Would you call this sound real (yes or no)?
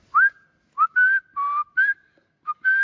yes